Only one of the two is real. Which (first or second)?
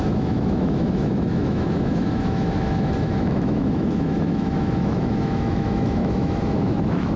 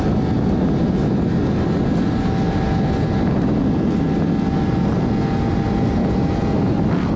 second